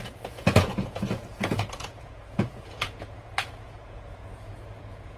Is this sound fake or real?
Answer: fake